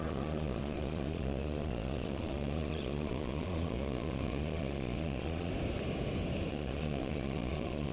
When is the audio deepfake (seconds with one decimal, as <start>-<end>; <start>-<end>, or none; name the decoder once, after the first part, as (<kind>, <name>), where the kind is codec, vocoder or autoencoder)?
0.0-5.5 (vocoder, Vocos); 6.5-7.9